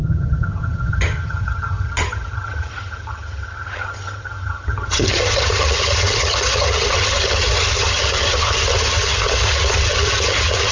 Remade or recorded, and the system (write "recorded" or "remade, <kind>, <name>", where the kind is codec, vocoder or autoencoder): remade, vocoder, HiFi-GAN